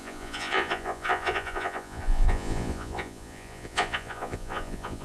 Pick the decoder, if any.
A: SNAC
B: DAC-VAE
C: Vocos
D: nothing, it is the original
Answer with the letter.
C